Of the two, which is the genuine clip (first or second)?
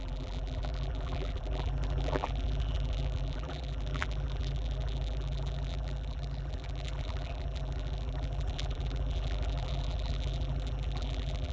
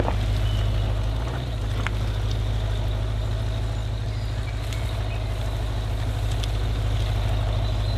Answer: second